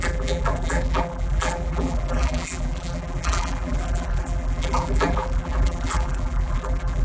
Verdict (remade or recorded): remade